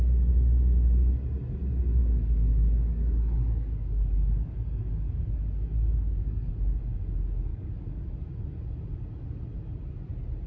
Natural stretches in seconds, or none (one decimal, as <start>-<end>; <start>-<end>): 0.0-2.0; 6.5-7.5; 8.0-10.5